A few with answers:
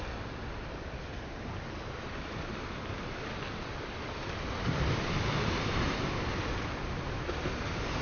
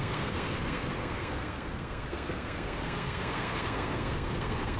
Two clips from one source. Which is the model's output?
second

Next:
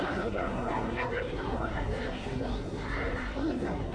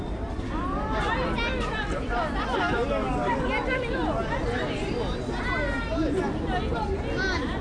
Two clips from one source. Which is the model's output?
first